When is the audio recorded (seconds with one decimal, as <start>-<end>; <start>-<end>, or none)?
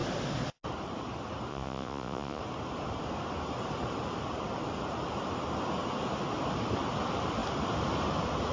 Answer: 0.0-1.5; 2.4-8.5